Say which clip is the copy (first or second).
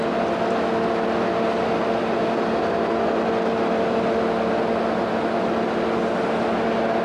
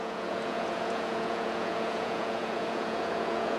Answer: second